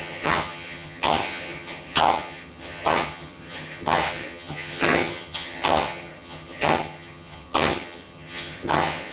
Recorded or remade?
remade